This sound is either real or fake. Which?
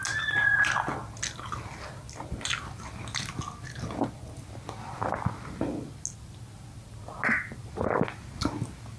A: real